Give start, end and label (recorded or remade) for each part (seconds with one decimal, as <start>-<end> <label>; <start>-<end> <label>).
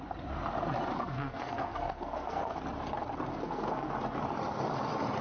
0.0-0.9 recorded; 0.9-2.6 remade; 2.6-3.3 recorded; 3.3-3.9 remade; 3.9-5.2 recorded